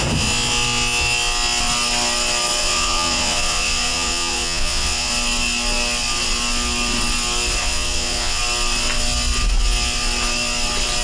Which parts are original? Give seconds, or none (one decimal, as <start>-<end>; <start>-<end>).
0.0-2.6; 5.1-7.6; 8.4-11.0